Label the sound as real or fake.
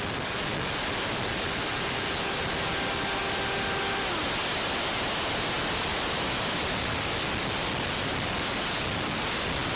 real